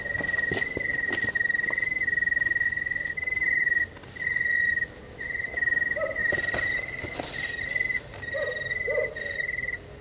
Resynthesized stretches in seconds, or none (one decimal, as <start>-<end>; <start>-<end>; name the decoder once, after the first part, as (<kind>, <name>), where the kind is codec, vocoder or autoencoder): none